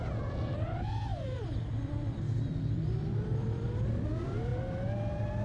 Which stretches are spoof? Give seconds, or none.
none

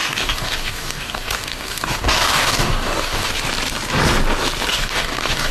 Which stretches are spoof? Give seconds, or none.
0.0-3.3; 4.7-5.5

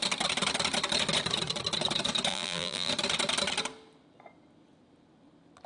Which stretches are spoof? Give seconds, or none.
2.3-2.9

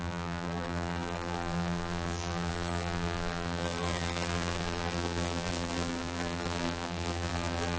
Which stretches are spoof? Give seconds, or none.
0.0-7.8

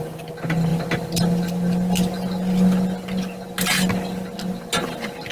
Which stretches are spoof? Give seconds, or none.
none

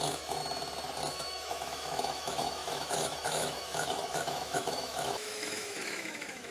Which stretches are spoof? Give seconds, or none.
0.0-0.4; 1.1-6.5

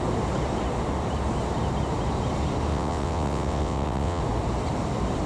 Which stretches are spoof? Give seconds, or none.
2.7-4.2

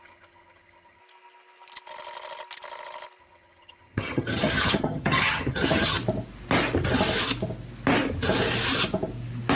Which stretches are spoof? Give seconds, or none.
0.0-1.0; 3.2-6.0